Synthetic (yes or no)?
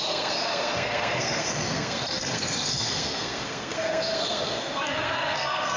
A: yes